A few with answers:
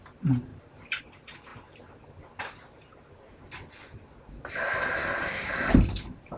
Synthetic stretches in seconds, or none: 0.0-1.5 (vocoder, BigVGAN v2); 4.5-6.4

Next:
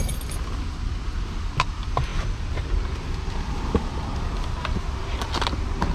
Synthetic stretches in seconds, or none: none

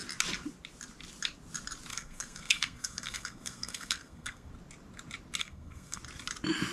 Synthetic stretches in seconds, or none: 1.9-4.5 (codec, SNAC); 5.4-6.0